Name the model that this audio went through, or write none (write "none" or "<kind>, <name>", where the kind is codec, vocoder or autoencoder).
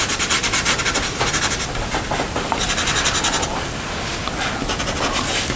none